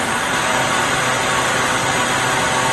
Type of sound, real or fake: real